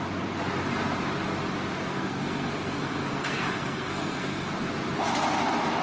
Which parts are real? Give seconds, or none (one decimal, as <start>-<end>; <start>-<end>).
0.0-1.9; 4.5-5.8